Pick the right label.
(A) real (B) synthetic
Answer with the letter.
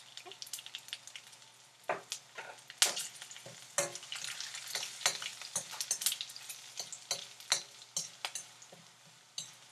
A